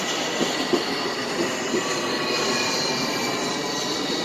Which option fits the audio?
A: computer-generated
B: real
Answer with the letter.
B